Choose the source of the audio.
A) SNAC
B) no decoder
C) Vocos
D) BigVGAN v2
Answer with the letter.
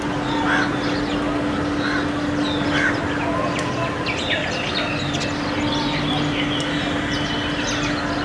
B